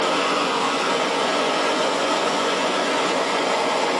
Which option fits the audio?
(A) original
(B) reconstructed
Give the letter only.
B